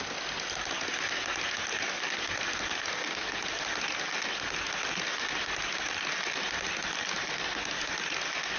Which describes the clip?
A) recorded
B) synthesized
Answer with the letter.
A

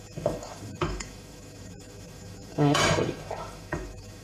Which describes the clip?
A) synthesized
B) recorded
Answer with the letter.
A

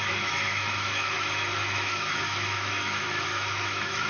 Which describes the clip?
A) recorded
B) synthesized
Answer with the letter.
B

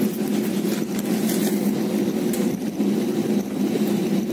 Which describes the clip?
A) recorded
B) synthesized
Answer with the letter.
A